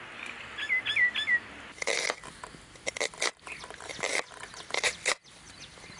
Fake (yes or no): no